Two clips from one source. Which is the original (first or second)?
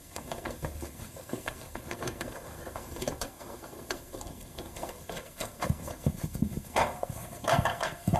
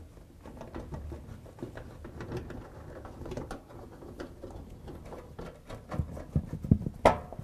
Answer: second